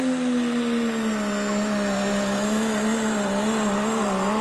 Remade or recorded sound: recorded